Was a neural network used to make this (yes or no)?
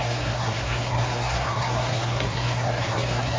yes